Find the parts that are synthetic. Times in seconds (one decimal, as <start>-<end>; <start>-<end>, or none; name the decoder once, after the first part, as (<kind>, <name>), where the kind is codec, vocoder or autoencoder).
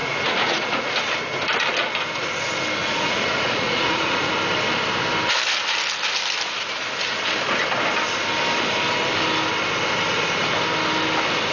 0.0-0.9 (vocoder, Vocos); 2.8-4.3